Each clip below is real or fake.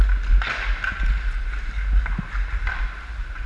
real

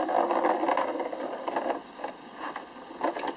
real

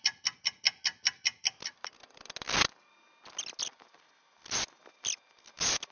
real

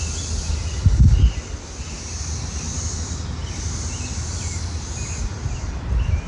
real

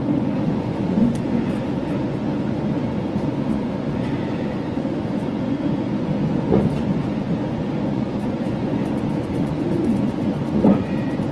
fake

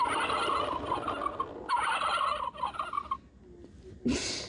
real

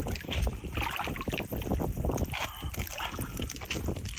real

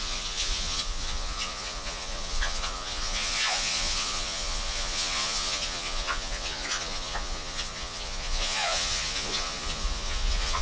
fake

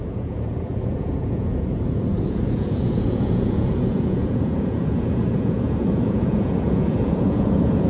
fake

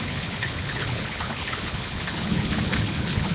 fake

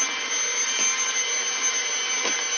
real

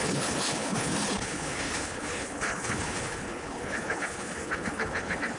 fake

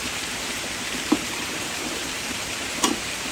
fake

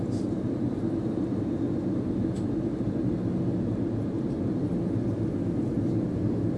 real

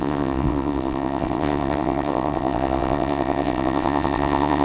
fake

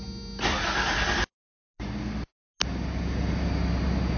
real